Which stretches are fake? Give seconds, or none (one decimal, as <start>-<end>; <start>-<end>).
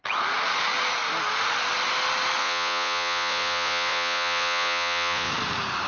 2.4-5.3